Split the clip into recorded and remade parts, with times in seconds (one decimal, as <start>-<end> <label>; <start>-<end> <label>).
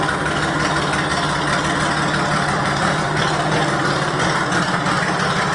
0.0-2.6 recorded; 2.6-4.4 remade; 4.4-5.5 recorded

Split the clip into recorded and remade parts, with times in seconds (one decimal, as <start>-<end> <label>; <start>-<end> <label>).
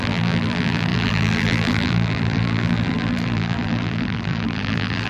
0.0-5.1 remade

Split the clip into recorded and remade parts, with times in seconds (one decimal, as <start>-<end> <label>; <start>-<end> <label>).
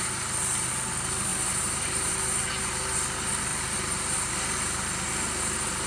0.0-1.3 recorded; 1.3-2.1 remade; 2.1-3.5 recorded; 3.5-4.3 remade; 4.3-5.9 recorded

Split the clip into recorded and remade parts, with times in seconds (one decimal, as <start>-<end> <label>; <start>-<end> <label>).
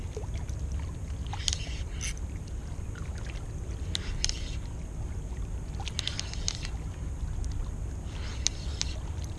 0.0-9.4 recorded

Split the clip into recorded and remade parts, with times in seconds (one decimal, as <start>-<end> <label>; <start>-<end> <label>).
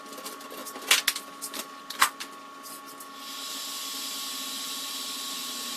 0.0-5.8 recorded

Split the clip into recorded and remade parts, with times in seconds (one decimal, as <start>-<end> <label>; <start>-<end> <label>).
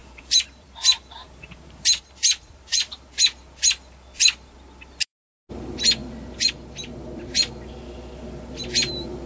0.0-3.1 remade; 3.1-9.3 recorded